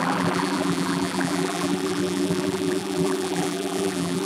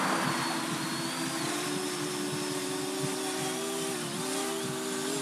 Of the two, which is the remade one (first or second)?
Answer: first